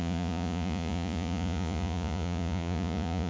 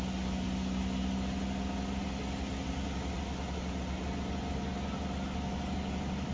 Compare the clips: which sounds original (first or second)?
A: second